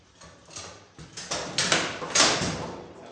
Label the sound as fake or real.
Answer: real